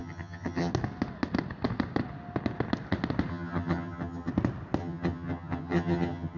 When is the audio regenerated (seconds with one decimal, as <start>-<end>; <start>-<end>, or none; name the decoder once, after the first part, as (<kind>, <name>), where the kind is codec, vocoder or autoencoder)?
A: 0.0-0.7 (vocoder, HiFi-GAN); 3.3-4.3; 4.8-6.4